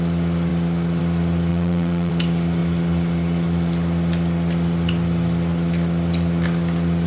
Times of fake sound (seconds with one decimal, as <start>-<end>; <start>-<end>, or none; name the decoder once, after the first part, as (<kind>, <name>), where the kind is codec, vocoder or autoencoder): 1.5-2.1 (vocoder, Vocos)